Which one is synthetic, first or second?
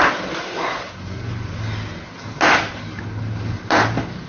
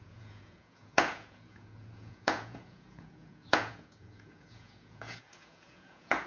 second